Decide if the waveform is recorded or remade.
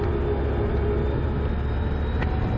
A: recorded